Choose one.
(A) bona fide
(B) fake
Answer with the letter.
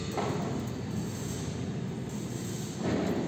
A